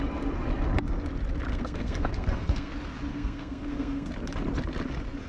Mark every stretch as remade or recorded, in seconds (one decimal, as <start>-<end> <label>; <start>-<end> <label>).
0.0-1.5 recorded; 1.5-2.7 remade; 2.7-3.1 recorded; 3.1-4.1 remade; 4.1-5.3 recorded